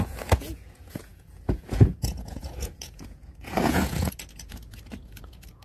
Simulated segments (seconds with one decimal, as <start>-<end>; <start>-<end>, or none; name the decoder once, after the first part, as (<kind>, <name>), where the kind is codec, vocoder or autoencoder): 0.0-5.6 (vocoder, Vocos)